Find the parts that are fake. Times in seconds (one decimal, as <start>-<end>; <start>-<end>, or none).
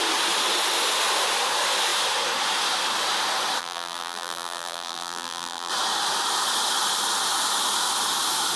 3.6-5.7